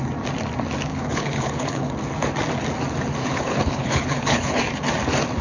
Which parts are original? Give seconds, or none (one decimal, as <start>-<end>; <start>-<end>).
0.0-0.9; 1.9-3.2; 4.6-5.4